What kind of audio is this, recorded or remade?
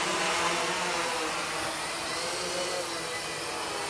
recorded